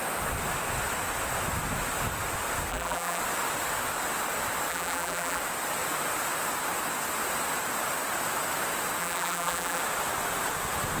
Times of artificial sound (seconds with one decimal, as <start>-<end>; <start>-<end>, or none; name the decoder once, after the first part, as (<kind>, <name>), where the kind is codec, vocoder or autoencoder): 2.7-3.2 (vocoder, BigVGAN v2); 4.7-5.4; 9.0-9.8